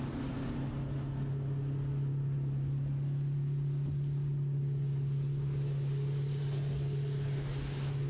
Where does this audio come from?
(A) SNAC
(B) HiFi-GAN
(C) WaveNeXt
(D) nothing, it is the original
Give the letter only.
D